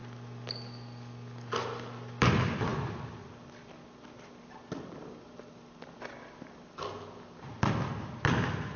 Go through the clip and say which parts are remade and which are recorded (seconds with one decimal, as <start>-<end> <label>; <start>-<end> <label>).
0.0-8.8 recorded

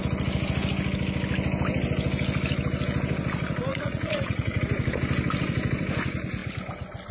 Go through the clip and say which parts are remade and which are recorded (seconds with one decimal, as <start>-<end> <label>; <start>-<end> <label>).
0.0-3.7 recorded; 3.7-4.6 remade; 4.6-7.1 recorded

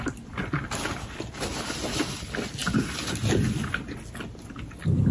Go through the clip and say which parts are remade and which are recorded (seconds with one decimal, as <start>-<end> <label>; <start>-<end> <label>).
0.0-5.1 recorded

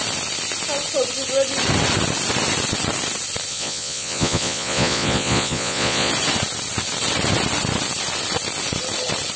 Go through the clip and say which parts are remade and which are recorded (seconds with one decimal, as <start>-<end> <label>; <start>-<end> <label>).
0.0-3.5 recorded; 3.5-6.1 remade; 6.1-9.4 recorded